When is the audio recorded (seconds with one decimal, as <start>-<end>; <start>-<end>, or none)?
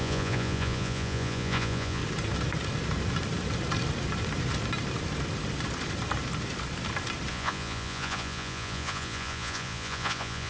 2.0-7.3